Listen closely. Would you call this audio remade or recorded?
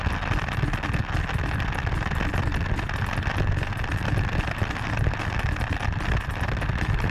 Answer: recorded